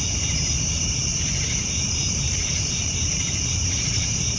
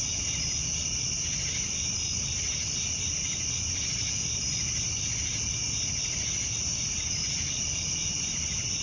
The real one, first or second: second